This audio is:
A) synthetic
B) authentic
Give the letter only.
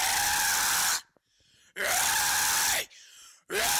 B